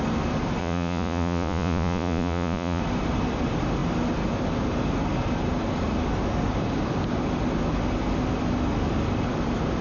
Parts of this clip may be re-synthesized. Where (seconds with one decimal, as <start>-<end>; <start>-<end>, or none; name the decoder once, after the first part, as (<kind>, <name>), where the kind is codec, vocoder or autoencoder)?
0.6-2.8 (vocoder, Vocos)